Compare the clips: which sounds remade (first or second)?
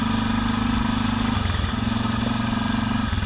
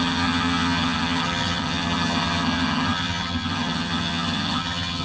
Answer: second